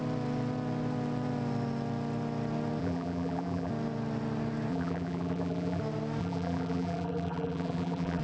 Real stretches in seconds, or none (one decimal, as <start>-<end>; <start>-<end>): 0.0-2.8; 3.7-4.7; 5.8-6.2